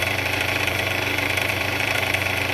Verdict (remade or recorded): remade